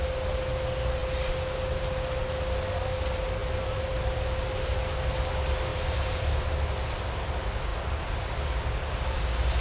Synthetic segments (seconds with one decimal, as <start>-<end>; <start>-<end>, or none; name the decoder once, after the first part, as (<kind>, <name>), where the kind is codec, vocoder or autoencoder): 3.4-3.9 (vocoder, BigVGAN v2); 5.7-6.4